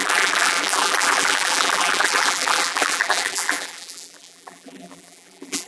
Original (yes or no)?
no